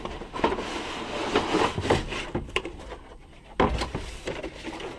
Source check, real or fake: real